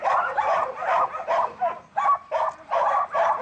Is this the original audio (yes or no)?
yes